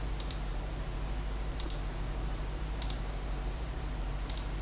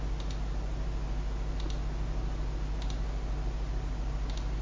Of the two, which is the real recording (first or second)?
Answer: second